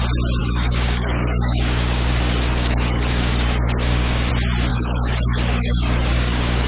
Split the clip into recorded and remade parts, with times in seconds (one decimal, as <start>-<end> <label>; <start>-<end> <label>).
0.0-0.4 recorded; 0.4-4.3 remade; 4.3-4.7 recorded; 4.7-6.7 remade